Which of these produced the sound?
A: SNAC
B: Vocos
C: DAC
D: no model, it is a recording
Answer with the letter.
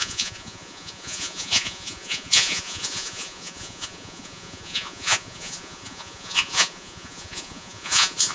B